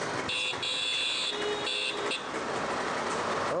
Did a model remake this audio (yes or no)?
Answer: no